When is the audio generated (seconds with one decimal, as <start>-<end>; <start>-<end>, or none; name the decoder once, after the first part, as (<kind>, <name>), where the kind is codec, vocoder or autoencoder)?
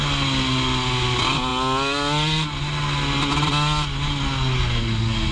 none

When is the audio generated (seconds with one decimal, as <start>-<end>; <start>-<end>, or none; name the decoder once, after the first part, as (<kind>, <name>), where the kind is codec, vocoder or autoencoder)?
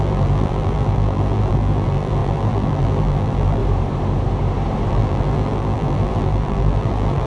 0.0-3.6 (vocoder, BigVGAN v2); 4.9-7.3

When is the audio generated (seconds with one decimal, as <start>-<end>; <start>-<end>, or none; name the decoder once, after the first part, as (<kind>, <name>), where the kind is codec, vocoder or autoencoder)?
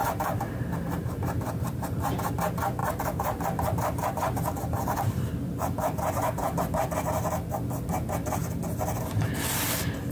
0.0-2.3 (vocoder, BigVGAN v2); 2.8-6.6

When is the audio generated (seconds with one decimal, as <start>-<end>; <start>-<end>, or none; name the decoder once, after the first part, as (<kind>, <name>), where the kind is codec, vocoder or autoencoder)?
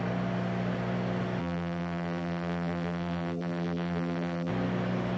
1.4-4.5 (vocoder, BigVGAN v2)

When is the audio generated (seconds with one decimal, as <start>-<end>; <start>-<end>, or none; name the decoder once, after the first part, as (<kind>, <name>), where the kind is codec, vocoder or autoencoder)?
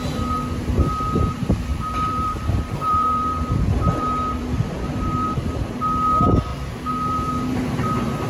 1.7-5.4 (vocoder, BigVGAN v2); 6.5-7.6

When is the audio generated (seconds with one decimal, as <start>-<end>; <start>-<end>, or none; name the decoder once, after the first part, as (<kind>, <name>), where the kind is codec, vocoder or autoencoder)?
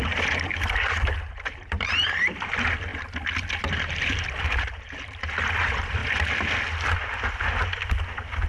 0.0-2.9 (vocoder, BigVGAN v2); 3.6-6.0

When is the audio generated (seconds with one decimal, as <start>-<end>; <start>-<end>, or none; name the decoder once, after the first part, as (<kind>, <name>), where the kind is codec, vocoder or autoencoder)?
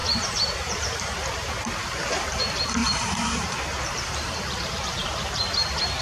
0.0-2.4 (vocoder, BigVGAN v2); 2.8-6.0